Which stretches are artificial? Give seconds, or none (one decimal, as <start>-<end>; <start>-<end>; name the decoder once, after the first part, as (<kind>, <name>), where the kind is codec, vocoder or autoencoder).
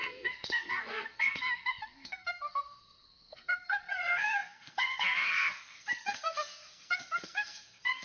0.0-8.0 (codec, SNAC)